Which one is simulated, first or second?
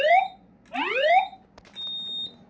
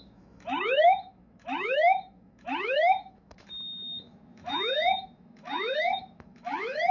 second